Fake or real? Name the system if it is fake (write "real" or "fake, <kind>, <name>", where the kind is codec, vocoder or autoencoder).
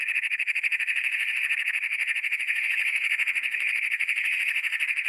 fake, autoencoder, DAC-VAE